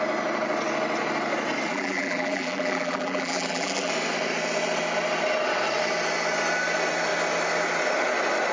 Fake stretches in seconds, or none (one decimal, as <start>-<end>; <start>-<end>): 1.7-3.9